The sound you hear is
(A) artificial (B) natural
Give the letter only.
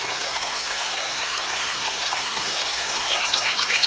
A